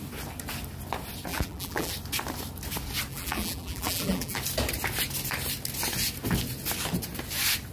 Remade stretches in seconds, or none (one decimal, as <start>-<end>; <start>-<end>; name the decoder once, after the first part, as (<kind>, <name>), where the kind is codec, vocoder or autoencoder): 1.3-1.9 (vocoder, BigVGAN v2); 3.1-4.4